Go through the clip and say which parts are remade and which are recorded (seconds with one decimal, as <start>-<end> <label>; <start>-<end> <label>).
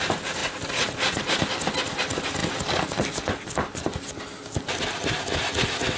0.0-6.0 recorded